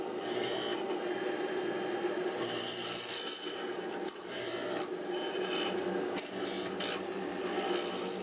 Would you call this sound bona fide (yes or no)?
yes